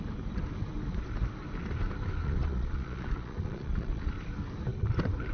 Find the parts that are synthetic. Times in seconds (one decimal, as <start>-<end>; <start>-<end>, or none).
2.2-4.1